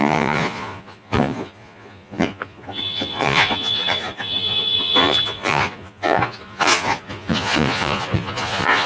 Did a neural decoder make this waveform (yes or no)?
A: yes